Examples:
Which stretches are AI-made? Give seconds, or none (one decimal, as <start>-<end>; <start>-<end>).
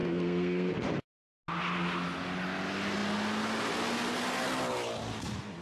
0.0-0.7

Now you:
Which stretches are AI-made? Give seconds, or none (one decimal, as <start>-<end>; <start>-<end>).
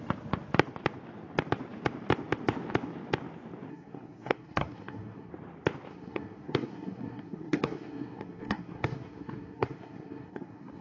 3.7-5.3; 5.9-10.8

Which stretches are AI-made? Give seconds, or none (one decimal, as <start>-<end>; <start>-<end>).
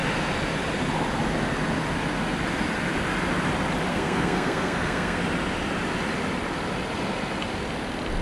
3.9-5.2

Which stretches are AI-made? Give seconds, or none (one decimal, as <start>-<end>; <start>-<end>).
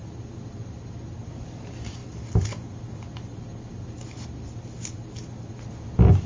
none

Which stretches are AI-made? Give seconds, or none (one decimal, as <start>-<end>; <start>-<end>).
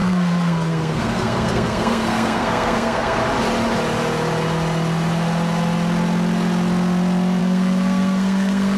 0.0-3.2; 7.4-8.8